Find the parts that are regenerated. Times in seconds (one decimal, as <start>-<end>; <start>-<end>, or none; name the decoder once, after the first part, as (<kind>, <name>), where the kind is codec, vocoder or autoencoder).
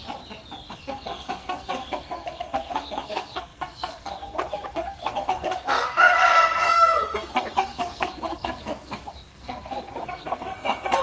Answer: 0.7-11.0 (codec, SNAC)